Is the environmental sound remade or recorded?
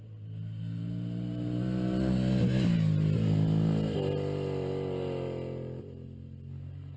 recorded